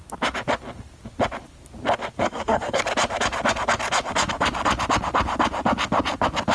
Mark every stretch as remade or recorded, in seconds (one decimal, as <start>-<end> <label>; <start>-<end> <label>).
0.0-2.2 recorded; 2.2-2.8 remade; 2.8-6.5 recorded

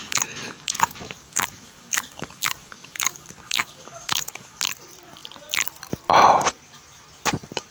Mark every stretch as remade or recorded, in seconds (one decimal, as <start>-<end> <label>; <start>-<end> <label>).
0.0-4.6 remade; 4.6-7.7 recorded

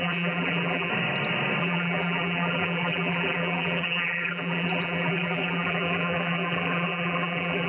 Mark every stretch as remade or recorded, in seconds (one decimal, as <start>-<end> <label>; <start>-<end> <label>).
0.0-0.9 remade; 0.9-1.6 recorded; 1.6-7.7 remade

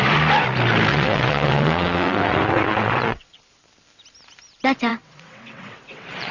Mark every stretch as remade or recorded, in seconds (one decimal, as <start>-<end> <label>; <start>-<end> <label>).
0.0-0.9 recorded; 0.9-3.4 remade; 3.4-4.9 recorded; 4.9-6.3 remade